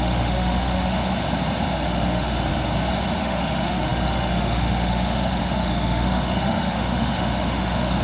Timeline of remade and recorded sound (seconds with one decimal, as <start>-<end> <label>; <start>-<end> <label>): 0.0-1.0 remade; 1.0-1.8 recorded; 1.8-2.5 remade; 2.5-3.2 recorded; 3.2-8.0 remade